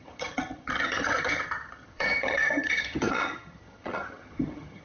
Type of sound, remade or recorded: remade